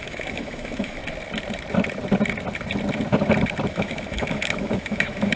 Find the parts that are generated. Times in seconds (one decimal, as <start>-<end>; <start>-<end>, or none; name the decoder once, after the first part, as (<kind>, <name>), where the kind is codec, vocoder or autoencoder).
0.0-1.0 (autoencoder, DAC-VAE); 3.7-5.4